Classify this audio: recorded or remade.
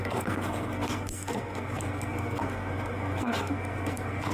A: remade